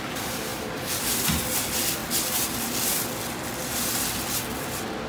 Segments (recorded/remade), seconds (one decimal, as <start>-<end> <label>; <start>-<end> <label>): 0.0-0.5 recorded; 0.5-1.0 remade; 1.0-5.1 recorded